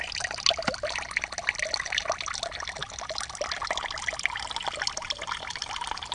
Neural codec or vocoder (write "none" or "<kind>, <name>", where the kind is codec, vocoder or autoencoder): none